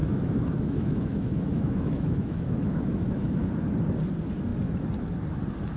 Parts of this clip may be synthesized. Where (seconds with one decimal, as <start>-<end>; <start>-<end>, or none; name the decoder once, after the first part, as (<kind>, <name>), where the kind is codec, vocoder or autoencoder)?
0.0-3.5 (autoencoder, DAC-VAE)